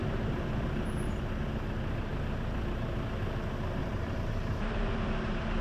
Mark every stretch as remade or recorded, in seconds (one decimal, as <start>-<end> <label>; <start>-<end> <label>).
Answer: 0.0-1.2 remade; 1.2-3.8 recorded; 3.8-5.6 remade